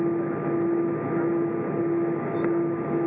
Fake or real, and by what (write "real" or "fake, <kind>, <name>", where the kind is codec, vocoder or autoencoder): real